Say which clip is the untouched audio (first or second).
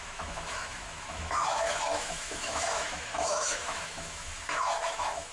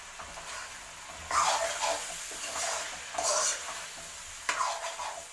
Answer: second